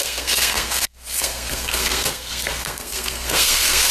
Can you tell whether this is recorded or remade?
remade